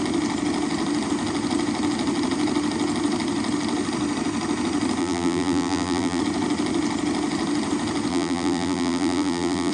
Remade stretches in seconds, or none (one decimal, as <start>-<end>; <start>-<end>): 5.0-6.2; 8.1-9.7